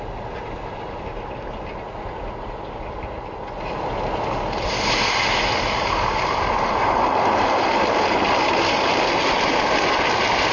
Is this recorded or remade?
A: recorded